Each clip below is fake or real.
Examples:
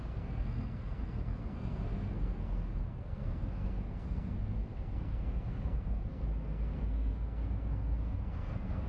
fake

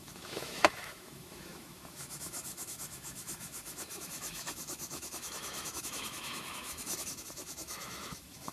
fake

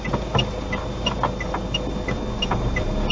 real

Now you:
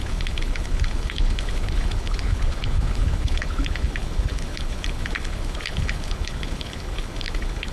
fake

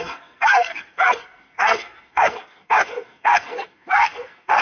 fake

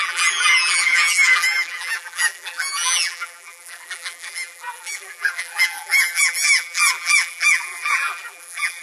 fake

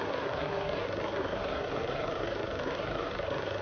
fake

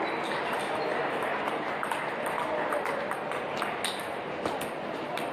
real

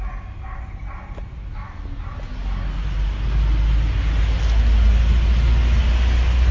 real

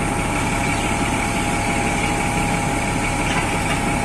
real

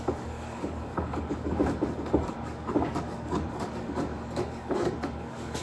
fake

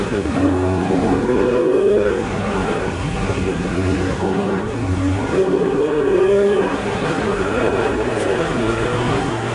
fake